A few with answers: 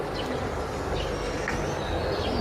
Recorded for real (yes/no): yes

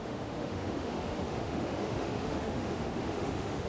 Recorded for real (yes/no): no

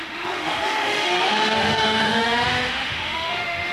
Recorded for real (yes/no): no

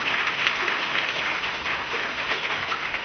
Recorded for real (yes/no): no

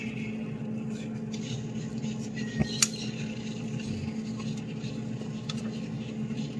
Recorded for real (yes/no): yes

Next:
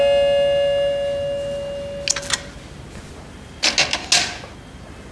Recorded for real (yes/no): yes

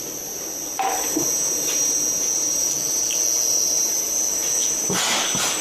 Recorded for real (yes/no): yes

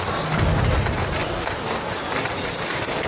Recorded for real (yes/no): yes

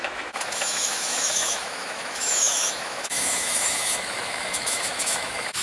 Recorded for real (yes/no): no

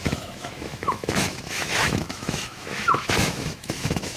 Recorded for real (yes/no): no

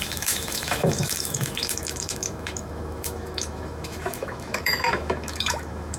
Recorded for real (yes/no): no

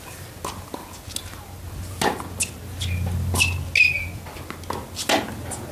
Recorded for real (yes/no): yes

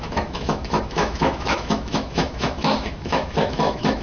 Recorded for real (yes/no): no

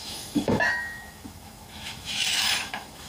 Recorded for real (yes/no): no